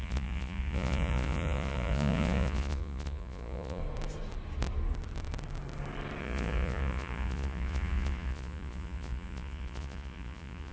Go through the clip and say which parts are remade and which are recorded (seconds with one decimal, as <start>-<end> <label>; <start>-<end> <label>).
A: 0.0-3.8 remade; 3.8-6.2 recorded; 6.2-10.7 remade